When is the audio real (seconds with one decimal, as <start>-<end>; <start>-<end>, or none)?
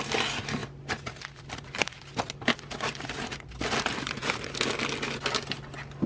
0.0-6.1